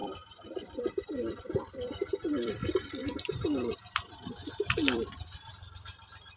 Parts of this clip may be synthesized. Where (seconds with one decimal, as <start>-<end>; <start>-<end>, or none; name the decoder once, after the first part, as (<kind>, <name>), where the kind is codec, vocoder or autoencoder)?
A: 0.0-2.6 (vocoder, BigVGAN v2); 3.3-6.4